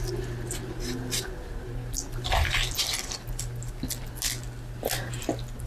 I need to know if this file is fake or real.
real